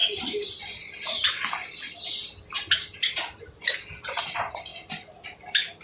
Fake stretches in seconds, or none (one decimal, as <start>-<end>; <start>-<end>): none